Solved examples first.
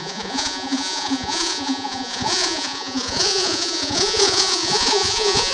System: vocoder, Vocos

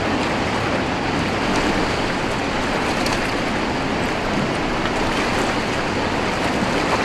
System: none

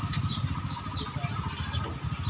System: none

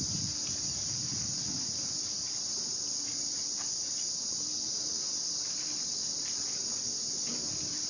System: none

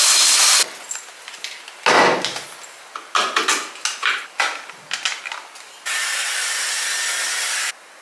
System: none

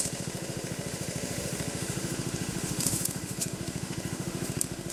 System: autoencoder, DAC-VAE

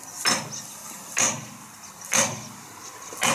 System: none